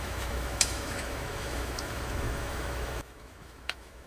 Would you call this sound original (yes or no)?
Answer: no